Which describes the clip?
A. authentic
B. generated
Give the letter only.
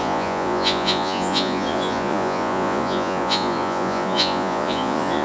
B